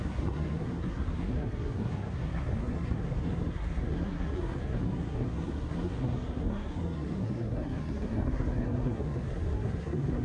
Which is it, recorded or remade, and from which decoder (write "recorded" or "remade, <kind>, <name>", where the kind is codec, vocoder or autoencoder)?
remade, codec, SNAC